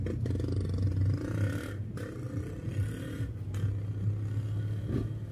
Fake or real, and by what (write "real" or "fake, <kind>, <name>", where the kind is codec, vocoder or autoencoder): real